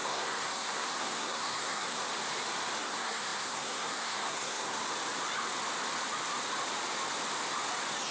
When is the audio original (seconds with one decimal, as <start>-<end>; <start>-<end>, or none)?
2.0-2.8; 4.8-8.1